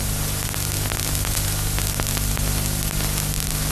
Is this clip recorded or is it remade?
recorded